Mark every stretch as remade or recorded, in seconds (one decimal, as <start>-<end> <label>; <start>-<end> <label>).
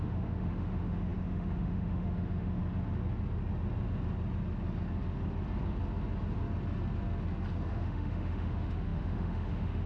0.0-2.6 remade; 2.6-7.7 recorded; 7.7-9.9 remade